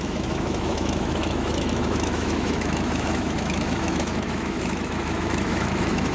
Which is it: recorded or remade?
remade